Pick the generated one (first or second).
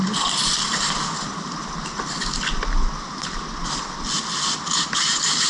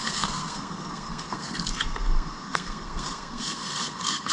second